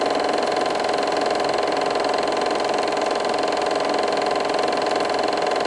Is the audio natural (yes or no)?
yes